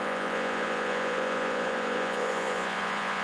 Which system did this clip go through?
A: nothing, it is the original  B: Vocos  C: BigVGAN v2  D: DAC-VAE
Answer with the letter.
B